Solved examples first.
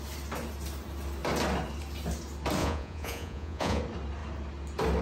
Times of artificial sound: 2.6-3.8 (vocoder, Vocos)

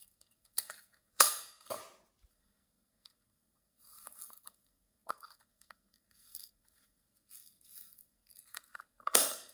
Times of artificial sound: 0.0-1.8 (codec, SNAC); 2.3-9.5

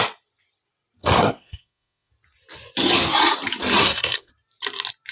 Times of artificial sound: 1.0-2.1 (codec, SNAC); 3.8-4.3

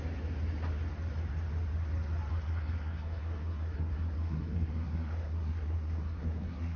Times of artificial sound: 2.3-6.8 (codec, SNAC)

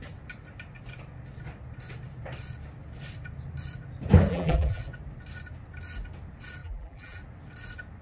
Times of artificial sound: 4.3-4.8 (vocoder, BigVGAN v2); 6.6-7.2

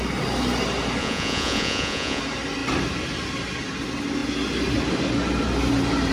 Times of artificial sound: 1.0-2.2 (vocoder, Vocos)

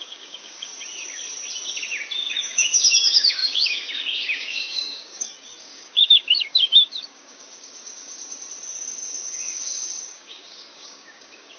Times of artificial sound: 0.0-0.7 (codec, DAC); 2.3-8.2; 8.9-11.6